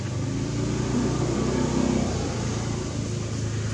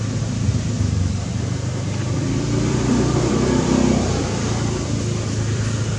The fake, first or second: second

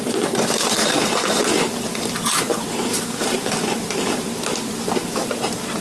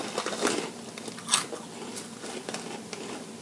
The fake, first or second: first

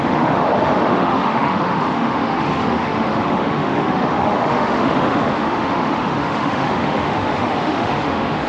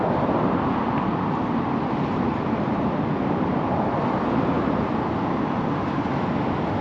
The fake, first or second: first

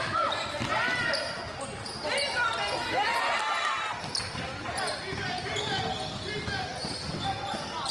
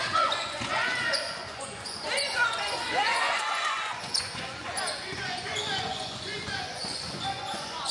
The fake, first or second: second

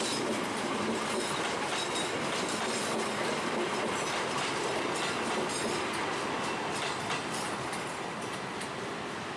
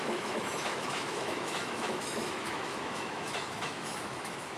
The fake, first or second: second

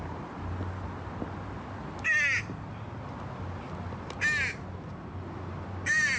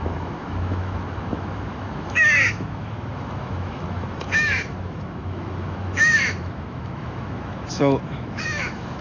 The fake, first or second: second